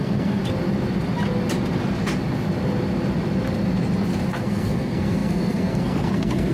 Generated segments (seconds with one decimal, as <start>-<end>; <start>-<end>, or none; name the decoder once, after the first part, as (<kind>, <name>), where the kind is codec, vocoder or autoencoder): 0.0-0.4 (codec, SNAC); 4.3-6.5